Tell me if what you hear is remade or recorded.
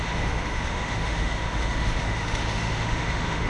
remade